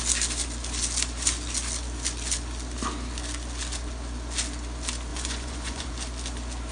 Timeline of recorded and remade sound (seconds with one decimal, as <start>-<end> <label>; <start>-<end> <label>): 0.0-5.1 recorded; 5.1-5.9 remade; 5.9-6.7 recorded